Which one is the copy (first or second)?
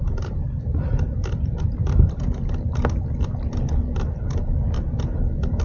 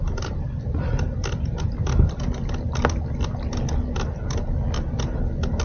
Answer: first